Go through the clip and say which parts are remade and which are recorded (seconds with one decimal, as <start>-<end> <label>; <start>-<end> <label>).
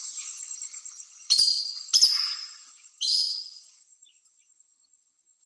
0.0-5.5 recorded